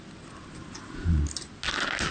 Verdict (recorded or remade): recorded